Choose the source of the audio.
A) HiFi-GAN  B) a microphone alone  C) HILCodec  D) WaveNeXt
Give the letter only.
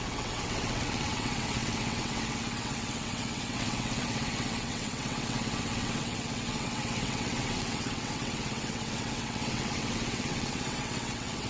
D